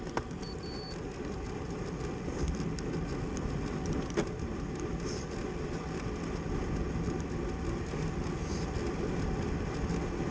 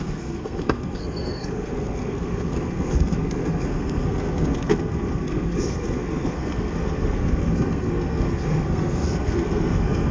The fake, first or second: second